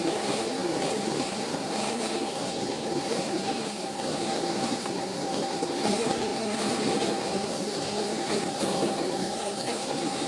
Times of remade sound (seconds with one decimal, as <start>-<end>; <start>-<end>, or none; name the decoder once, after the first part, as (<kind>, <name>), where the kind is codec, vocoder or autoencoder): 0.0-10.3 (codec, SNAC)